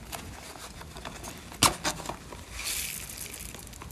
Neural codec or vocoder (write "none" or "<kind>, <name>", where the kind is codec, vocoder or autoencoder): none